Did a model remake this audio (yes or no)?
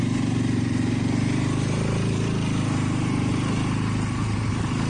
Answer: yes